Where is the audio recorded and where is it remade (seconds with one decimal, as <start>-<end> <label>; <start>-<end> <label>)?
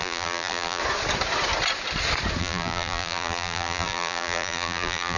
0.0-0.8 remade; 0.8-2.4 recorded; 2.4-5.2 remade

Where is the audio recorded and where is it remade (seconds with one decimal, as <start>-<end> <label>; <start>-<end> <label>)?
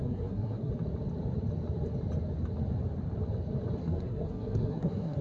0.0-0.7 remade; 0.7-3.8 recorded; 3.8-5.2 remade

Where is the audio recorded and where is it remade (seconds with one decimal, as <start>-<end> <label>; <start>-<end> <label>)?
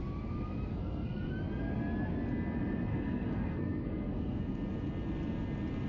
0.0-0.7 recorded; 0.7-1.3 remade; 1.3-2.9 recorded; 2.9-4.4 remade; 4.4-5.9 recorded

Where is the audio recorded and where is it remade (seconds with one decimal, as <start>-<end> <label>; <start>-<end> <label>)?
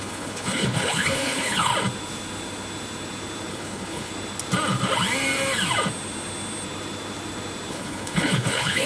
0.0-1.7 remade; 1.7-3.5 recorded; 3.5-4.1 remade; 4.1-7.7 recorded; 7.7-8.9 remade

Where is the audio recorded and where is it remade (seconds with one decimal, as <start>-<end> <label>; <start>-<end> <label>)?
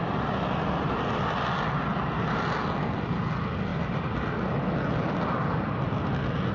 0.0-1.9 recorded; 1.9-2.5 remade; 2.5-3.7 recorded; 3.7-4.8 remade; 4.8-6.5 recorded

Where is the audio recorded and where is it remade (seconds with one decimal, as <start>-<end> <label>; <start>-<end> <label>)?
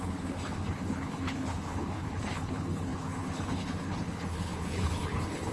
0.0-5.5 remade